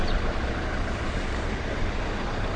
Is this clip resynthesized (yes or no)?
yes